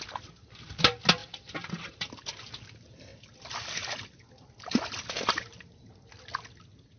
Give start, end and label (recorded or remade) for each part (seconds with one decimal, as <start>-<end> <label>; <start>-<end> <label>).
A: 0.0-1.2 recorded; 1.2-2.1 remade; 2.1-3.1 recorded; 3.1-5.0 remade; 5.0-7.0 recorded

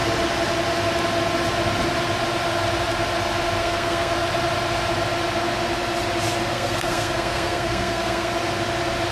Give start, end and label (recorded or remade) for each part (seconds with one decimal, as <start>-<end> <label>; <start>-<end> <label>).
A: 0.0-3.6 recorded; 3.6-4.1 remade; 4.1-6.5 recorded; 6.5-8.3 remade; 8.3-9.1 recorded